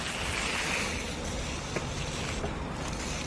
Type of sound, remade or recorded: recorded